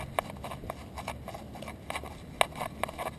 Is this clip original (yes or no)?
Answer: yes